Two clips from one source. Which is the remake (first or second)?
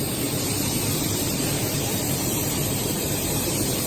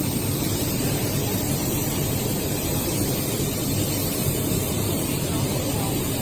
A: first